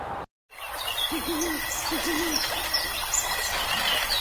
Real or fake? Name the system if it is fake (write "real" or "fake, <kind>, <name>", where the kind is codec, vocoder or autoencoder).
real